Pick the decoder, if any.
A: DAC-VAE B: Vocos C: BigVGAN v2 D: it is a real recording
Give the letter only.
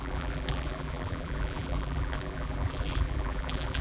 C